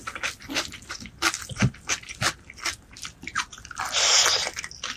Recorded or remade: recorded